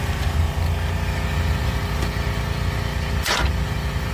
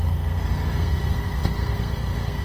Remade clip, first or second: second